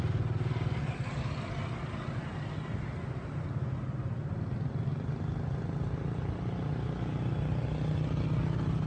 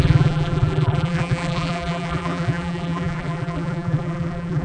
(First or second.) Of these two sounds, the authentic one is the first